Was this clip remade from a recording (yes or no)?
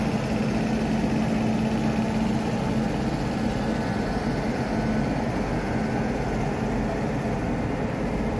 no